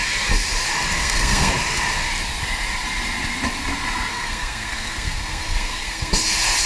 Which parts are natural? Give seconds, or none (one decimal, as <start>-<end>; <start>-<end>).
0.0-1.0; 1.5-4.1; 6.1-6.7